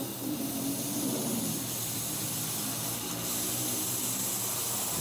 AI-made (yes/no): no